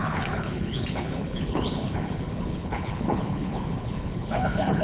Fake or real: fake